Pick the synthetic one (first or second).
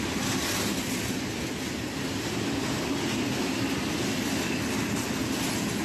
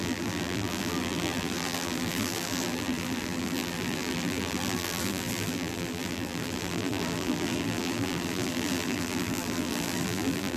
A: second